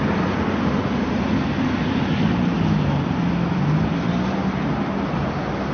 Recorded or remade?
recorded